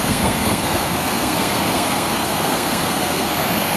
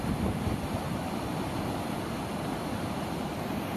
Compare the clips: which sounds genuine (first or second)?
second